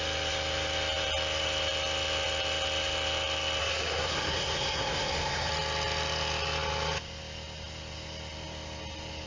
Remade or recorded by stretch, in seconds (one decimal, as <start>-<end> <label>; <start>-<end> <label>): 0.0-3.6 recorded; 3.6-5.5 remade; 5.5-9.3 recorded